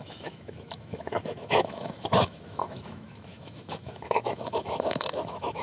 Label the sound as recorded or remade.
remade